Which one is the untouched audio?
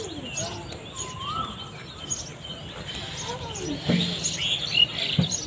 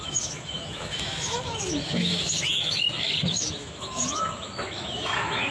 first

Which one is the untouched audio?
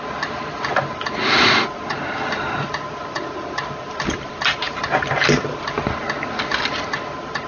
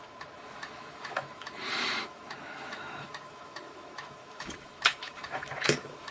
first